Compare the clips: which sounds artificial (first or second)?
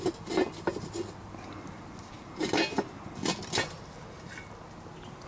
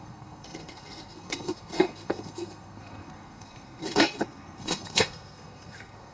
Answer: second